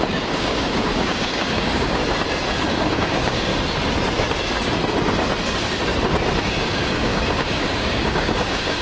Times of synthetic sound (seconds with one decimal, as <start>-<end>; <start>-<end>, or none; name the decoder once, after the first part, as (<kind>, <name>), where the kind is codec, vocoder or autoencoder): 0.0-2.0 (codec, DAC); 2.7-3.5; 6.6-8.8